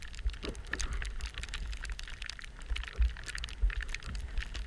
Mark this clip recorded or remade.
recorded